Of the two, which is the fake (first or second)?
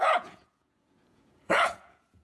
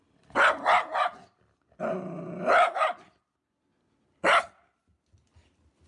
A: first